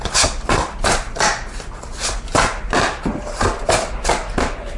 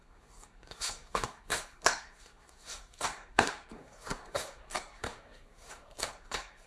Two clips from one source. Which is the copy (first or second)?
second